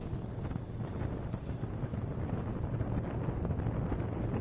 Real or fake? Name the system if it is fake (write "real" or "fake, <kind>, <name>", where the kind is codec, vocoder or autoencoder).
real